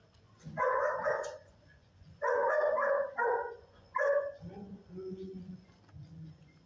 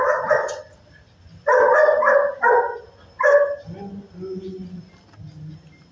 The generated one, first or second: first